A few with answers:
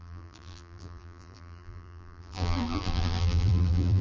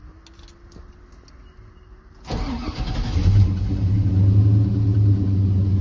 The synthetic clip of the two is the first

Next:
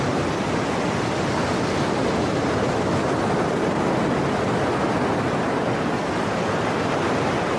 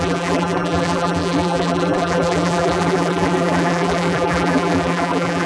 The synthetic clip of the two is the second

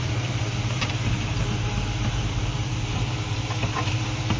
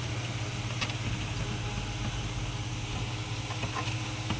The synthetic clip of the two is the first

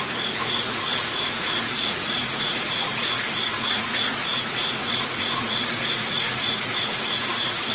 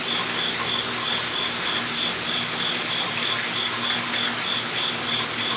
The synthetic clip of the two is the first